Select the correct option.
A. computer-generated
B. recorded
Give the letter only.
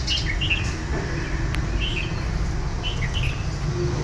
B